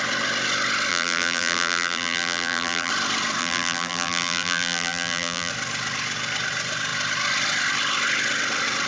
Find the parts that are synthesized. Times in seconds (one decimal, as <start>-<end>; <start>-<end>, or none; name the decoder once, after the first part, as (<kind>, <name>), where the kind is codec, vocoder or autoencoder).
0.9-2.9 (vocoder, BigVGAN v2); 3.4-5.5